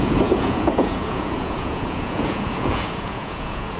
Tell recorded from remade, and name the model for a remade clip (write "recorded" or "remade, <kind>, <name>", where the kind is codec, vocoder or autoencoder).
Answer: remade, vocoder, Vocos